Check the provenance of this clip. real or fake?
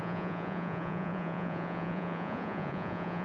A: fake